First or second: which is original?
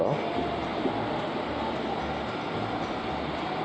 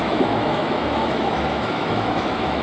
first